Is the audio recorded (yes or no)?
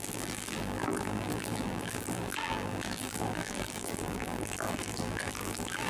no